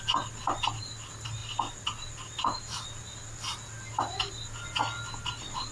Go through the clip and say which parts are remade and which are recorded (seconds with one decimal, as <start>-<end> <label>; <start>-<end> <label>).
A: 0.0-5.7 recorded